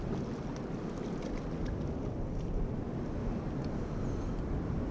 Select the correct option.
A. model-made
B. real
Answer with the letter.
B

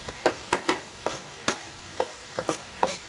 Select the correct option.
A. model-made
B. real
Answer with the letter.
A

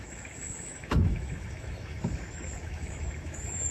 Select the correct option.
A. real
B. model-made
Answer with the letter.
B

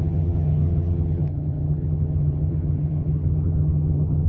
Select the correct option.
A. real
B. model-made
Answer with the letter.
B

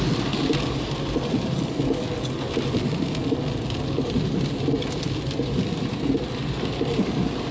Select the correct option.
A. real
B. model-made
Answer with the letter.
A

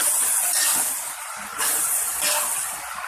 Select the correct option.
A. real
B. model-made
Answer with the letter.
A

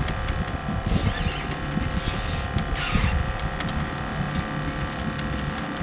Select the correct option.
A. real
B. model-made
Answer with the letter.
A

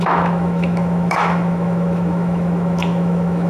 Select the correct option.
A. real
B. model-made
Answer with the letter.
B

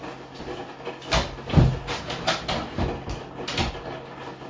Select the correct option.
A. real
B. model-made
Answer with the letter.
A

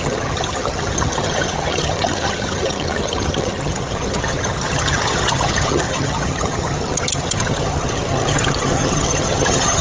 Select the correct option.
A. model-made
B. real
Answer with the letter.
A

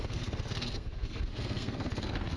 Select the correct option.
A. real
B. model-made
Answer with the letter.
B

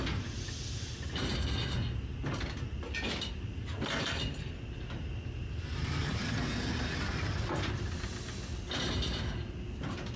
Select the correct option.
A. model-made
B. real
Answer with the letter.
B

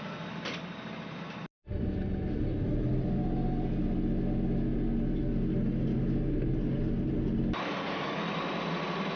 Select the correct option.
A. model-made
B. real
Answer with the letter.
B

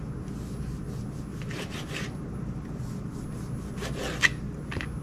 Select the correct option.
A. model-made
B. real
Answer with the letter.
B